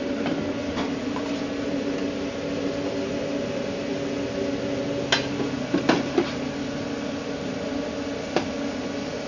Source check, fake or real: real